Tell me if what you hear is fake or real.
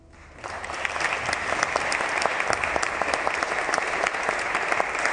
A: real